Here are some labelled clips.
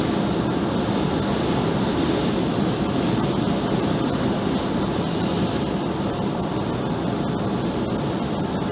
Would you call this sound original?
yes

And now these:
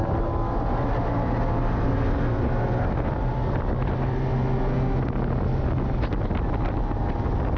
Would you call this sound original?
yes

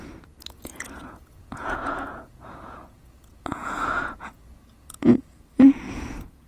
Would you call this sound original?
no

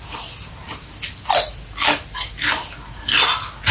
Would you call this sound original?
yes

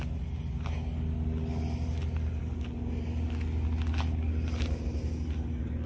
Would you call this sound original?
yes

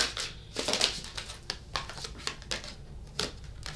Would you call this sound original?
yes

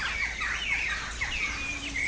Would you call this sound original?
yes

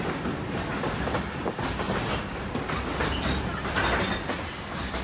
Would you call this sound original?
yes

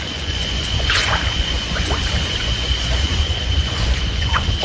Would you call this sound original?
no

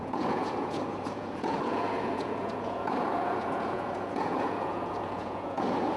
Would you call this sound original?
no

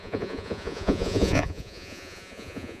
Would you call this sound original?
no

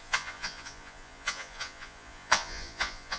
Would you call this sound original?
no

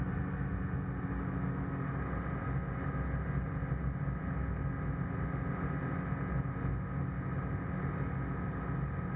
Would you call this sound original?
yes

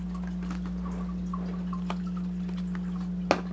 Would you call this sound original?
yes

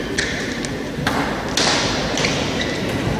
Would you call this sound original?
yes